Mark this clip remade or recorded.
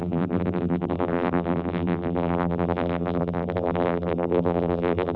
remade